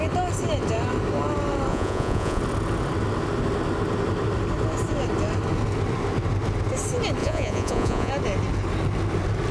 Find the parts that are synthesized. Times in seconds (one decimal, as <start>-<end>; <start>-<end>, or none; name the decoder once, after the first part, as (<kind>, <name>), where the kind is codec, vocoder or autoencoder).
1.7-2.4 (vocoder, Vocos); 7.2-8.1